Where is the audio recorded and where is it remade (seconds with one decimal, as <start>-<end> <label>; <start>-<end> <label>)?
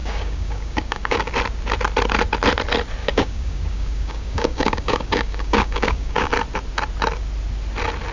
0.0-1.3 remade; 1.3-3.0 recorded; 3.0-6.3 remade; 6.3-8.1 recorded